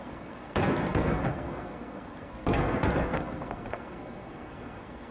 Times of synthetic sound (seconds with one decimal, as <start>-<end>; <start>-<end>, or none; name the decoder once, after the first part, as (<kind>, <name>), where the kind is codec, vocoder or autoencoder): 0.0-5.1 (codec, SNAC)